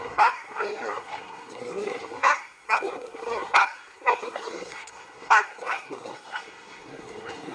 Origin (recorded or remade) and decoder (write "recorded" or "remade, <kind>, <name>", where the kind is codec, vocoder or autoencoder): remade, codec, SNAC